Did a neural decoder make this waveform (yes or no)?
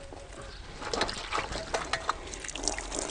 no